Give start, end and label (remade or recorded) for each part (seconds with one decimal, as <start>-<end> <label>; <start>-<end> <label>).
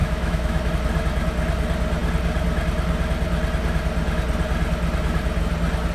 0.0-0.7 remade; 0.7-5.9 recorded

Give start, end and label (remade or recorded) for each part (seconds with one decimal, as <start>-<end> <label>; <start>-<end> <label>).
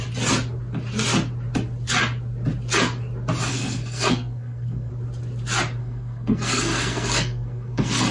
0.0-3.5 recorded; 3.5-4.9 remade; 4.9-5.8 recorded; 5.8-8.1 remade